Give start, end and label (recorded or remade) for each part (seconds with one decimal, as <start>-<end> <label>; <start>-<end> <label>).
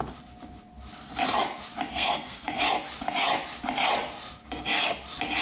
0.0-1.9 recorded; 1.9-2.6 remade; 2.6-5.4 recorded